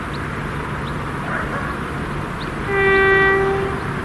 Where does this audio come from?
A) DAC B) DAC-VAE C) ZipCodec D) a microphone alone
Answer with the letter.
D